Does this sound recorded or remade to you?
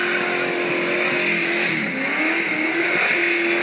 recorded